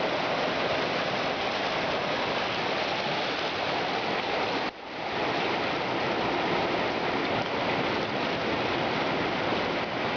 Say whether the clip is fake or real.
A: real